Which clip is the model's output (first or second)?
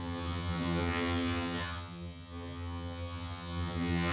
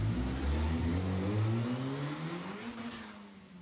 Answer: first